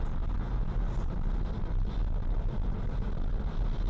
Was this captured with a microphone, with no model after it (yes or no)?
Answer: yes